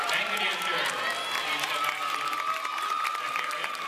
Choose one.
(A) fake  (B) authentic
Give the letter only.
B